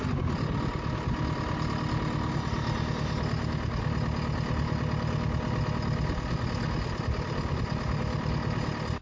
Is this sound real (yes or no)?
yes